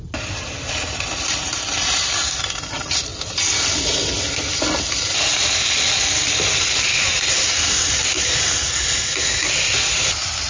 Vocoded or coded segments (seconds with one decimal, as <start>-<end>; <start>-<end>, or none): none